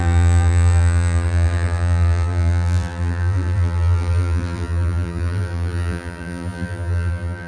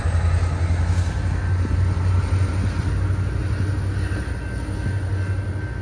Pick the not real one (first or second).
first